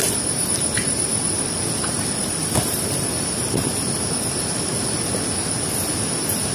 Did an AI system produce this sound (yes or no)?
no